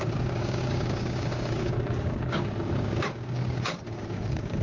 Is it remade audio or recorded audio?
remade